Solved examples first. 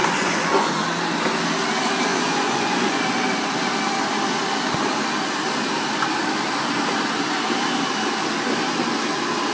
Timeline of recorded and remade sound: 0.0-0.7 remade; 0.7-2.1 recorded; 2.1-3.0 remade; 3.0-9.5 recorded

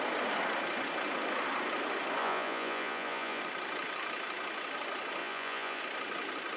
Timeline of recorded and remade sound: 0.0-2.2 recorded; 2.2-3.4 remade; 3.4-5.2 recorded; 5.2-5.8 remade; 5.8-6.6 recorded

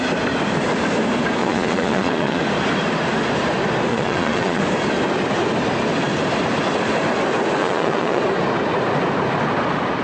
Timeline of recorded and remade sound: 0.0-1.4 recorded; 1.4-2.4 remade; 2.4-3.9 recorded; 3.9-4.6 remade; 4.6-7.6 recorded; 7.6-8.2 remade; 8.2-10.0 recorded

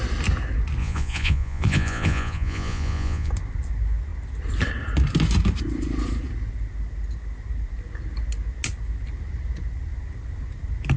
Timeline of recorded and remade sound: 0.0-0.8 recorded; 0.8-3.3 remade; 3.3-11.0 recorded

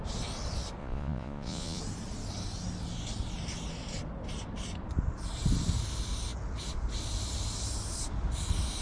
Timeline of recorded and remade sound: 0.0-0.8 recorded; 0.8-1.8 remade; 1.8-8.8 recorded